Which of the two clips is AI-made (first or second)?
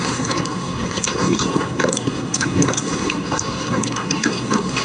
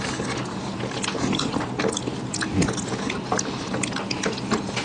first